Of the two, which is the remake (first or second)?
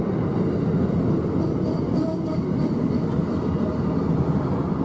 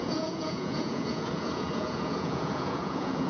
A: second